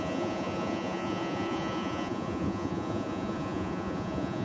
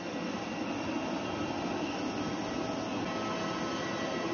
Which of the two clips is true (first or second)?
second